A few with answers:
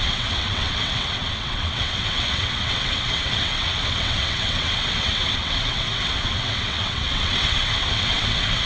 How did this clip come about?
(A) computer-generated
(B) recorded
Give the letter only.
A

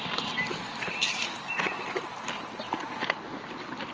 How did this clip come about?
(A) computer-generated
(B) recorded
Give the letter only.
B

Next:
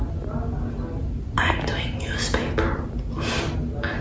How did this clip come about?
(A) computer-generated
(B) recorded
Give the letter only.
B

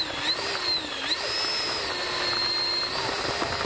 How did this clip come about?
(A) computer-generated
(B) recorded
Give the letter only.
B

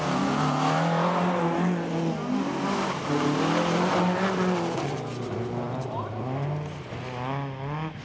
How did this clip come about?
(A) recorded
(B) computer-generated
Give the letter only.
A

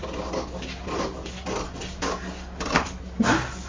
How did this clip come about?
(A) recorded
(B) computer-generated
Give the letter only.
A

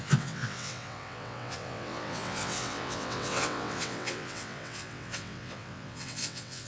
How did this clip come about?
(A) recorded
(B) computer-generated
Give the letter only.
B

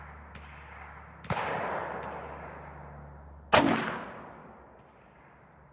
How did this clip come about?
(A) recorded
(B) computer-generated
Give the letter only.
A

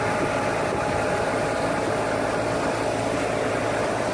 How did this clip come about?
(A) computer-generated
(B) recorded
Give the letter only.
B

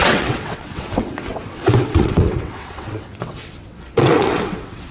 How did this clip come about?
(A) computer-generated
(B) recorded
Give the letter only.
A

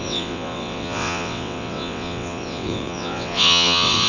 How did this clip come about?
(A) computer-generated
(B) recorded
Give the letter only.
A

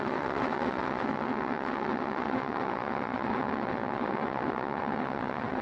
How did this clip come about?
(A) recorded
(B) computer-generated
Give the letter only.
B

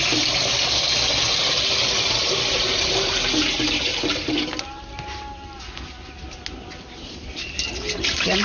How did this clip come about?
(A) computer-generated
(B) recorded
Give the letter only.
B